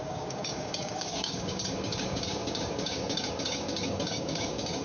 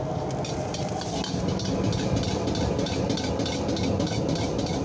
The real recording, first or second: second